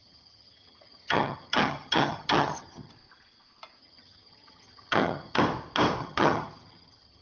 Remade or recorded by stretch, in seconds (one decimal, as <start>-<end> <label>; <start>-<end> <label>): 0.0-2.9 remade; 2.9-3.8 recorded; 3.8-5.4 remade; 5.4-6.0 recorded; 6.0-7.2 remade